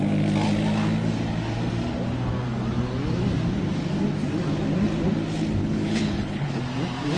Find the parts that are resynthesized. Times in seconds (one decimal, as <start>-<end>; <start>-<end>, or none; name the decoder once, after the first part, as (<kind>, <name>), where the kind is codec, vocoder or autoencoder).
5.6-6.6 (codec, HILCodec)